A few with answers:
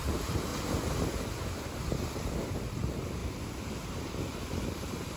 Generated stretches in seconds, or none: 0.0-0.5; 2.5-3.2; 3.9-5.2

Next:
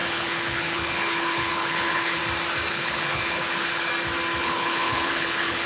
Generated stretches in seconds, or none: 0.0-2.2; 2.7-3.9; 4.4-5.7

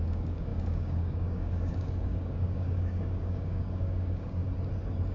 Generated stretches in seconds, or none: 0.0-4.4

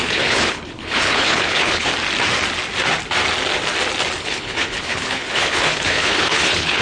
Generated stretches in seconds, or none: 0.0-1.9; 4.2-6.8

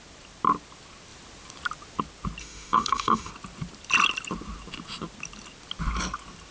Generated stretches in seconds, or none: 2.4-3.3